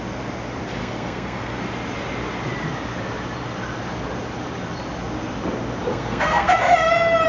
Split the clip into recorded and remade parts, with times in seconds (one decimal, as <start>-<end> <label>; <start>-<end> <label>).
0.0-0.8 recorded; 0.8-1.6 remade; 1.6-5.9 recorded; 5.9-6.6 remade; 6.6-7.3 recorded